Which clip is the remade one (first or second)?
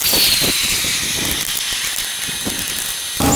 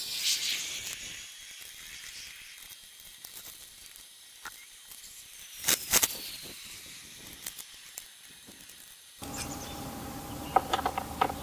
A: second